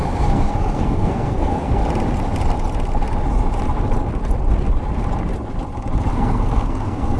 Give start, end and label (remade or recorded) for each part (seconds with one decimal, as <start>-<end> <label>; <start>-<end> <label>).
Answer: 0.0-1.8 remade; 1.8-6.1 recorded; 6.1-7.2 remade